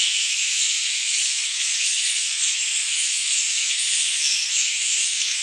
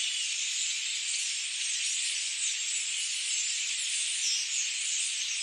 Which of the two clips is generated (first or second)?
first